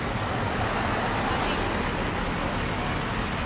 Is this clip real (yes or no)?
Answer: yes